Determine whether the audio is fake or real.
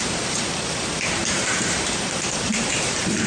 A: fake